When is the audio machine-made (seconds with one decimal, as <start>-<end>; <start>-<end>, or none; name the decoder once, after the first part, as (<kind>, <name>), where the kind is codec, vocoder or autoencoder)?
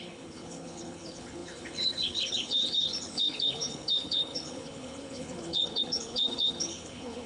0.0-7.3 (codec, HILCodec)